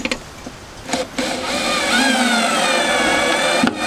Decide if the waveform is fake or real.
real